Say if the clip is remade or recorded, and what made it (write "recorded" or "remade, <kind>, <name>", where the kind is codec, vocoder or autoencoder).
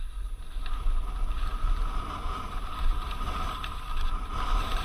recorded